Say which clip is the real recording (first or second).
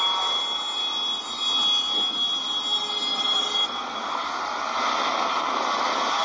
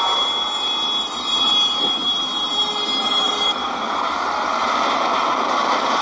first